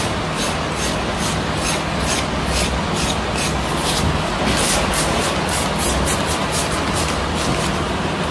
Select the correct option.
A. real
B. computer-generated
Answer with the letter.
A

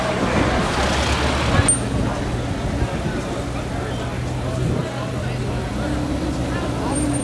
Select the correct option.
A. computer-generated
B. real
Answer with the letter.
B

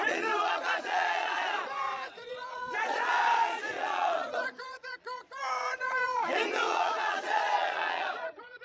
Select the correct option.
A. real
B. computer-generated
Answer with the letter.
B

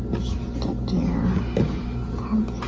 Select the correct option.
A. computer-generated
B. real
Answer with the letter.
B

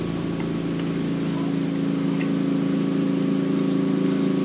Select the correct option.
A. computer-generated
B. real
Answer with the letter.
B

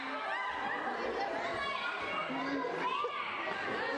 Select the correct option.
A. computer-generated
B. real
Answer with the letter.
B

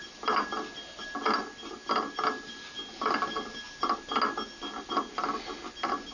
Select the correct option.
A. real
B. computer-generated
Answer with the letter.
A